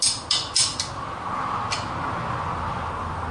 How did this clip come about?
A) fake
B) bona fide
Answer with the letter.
B